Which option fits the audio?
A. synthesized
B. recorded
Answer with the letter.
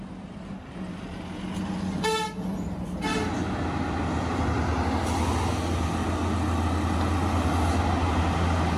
B